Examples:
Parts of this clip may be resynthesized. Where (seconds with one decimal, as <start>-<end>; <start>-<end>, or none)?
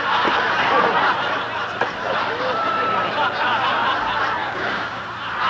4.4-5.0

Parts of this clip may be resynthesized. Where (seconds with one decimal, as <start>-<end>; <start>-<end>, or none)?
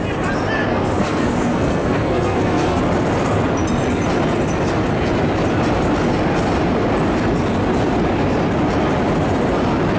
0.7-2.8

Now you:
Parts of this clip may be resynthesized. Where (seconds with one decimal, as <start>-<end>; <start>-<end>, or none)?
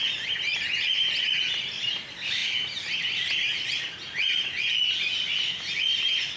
none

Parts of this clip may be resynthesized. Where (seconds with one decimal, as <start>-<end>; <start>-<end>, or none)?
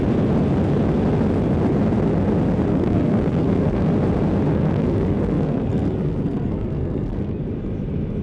2.7-3.9; 4.5-7.4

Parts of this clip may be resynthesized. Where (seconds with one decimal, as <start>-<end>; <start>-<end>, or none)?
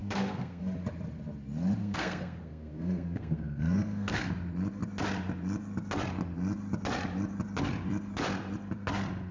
0.0-0.6; 1.8-4.3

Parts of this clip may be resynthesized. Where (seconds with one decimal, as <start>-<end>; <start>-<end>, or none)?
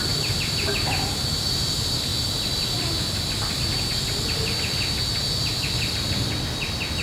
none